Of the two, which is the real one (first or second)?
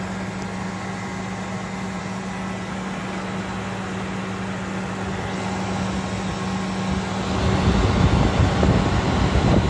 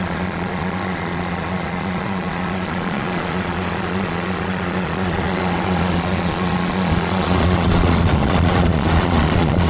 first